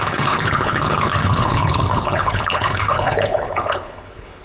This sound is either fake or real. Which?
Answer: fake